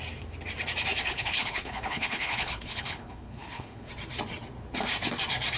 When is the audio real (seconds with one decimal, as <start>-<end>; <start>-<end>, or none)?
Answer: 0.0-1.1; 3.9-5.6